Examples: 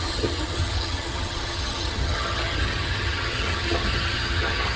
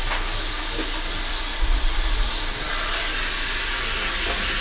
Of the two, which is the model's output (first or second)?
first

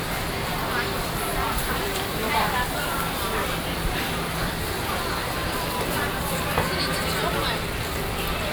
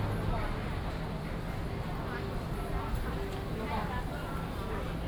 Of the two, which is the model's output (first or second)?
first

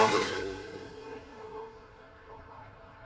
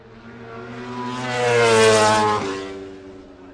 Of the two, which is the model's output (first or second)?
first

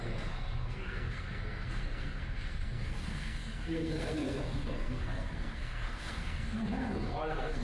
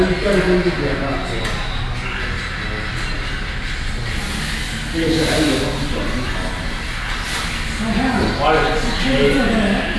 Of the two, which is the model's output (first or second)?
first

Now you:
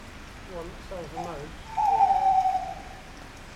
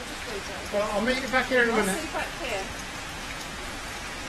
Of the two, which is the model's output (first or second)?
second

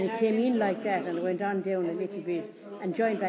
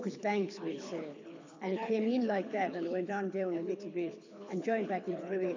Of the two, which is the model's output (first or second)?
second